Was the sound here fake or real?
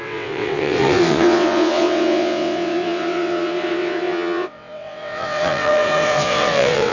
fake